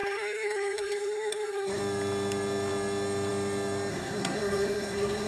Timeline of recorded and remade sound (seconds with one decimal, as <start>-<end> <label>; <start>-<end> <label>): 0.0-1.8 remade; 1.8-3.9 recorded; 3.9-5.3 remade